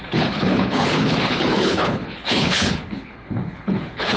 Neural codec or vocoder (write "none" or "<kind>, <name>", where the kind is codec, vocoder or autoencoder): codec, HILCodec